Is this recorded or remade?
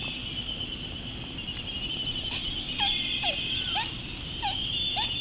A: remade